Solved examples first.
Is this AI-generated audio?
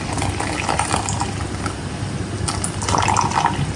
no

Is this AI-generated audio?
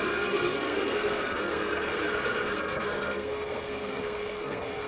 yes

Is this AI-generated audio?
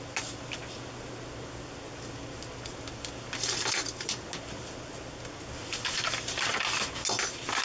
no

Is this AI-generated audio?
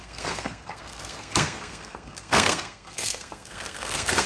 yes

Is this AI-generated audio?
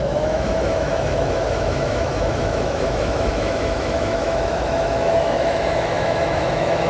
yes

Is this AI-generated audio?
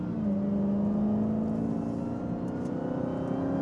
no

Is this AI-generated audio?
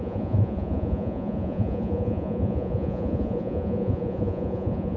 yes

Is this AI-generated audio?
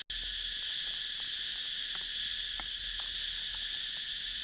no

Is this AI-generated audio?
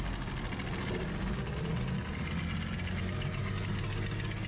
no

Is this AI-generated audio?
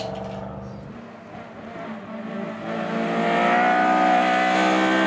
no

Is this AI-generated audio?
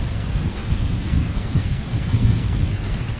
yes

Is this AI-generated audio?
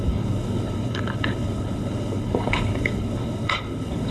yes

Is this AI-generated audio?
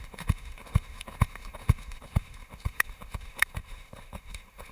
yes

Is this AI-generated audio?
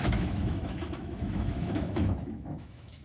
yes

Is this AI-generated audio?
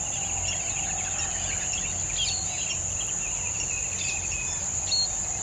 no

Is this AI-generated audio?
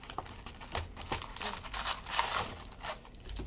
no